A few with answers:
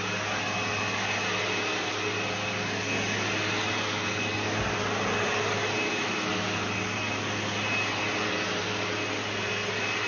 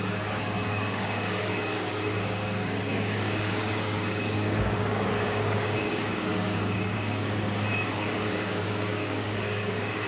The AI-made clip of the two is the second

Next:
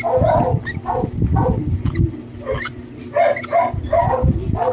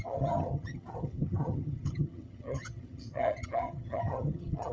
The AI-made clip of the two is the second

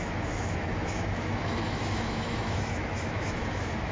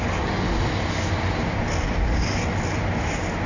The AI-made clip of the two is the first